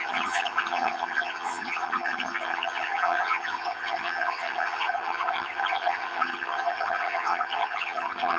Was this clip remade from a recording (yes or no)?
yes